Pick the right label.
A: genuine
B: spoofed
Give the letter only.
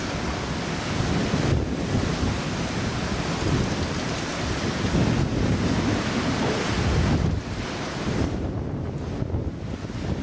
A